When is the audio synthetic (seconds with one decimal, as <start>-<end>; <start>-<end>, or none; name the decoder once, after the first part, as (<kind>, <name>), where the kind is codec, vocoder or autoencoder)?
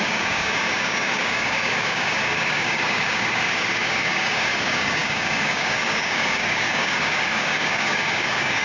0.0-8.6 (codec, DAC)